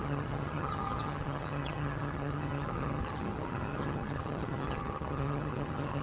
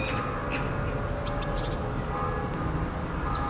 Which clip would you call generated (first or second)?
first